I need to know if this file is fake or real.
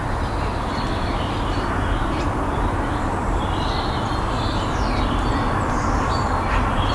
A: real